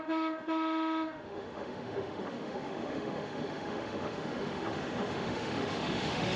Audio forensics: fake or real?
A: fake